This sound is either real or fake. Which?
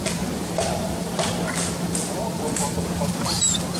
real